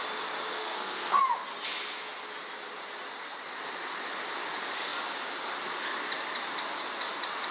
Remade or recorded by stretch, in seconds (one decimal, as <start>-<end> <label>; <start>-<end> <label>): 0.0-0.5 recorded; 0.5-1.2 remade; 1.2-7.5 recorded

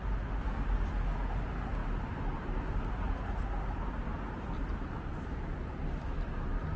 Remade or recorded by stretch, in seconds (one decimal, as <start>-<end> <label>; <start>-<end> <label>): 0.0-6.8 recorded

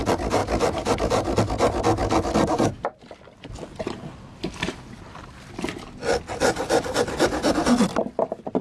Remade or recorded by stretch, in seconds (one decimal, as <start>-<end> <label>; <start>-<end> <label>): 0.0-8.6 recorded

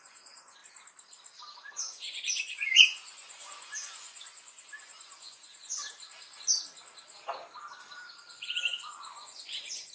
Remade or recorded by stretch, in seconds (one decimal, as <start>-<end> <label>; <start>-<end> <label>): 0.0-0.6 remade; 0.6-1.7 recorded; 1.7-5.8 remade; 5.8-8.3 recorded; 8.3-9.9 remade

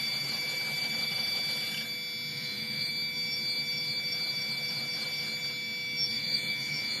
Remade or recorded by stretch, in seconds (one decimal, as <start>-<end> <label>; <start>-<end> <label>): 0.0-2.3 recorded; 2.3-2.9 remade; 2.9-6.1 recorded; 6.1-7.0 remade

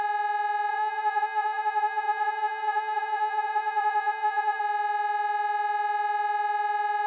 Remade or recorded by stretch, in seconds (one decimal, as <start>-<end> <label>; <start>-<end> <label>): 0.0-0.7 recorded; 0.7-4.6 remade; 4.6-7.1 recorded